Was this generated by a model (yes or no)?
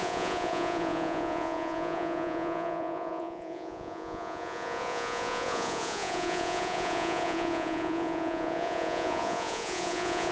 yes